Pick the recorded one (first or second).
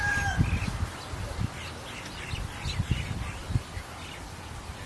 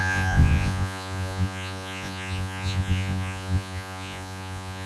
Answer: first